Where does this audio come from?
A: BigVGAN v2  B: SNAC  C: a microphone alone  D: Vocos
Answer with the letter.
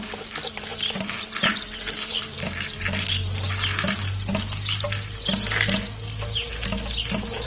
C